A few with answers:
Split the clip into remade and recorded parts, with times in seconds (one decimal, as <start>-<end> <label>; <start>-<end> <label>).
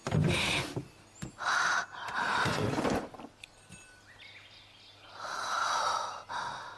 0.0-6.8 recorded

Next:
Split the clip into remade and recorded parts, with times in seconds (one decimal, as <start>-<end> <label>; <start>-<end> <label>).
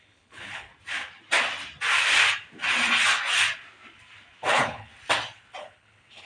0.0-0.7 remade; 0.7-4.5 recorded; 4.5-4.9 remade; 4.9-5.6 recorded; 5.6-6.3 remade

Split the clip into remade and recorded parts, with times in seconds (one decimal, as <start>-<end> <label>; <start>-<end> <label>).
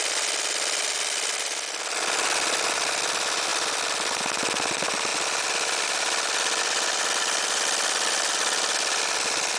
0.0-9.6 recorded